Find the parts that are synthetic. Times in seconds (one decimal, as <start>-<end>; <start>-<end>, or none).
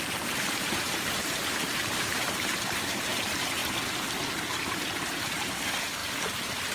0.0-3.6; 4.3-6.0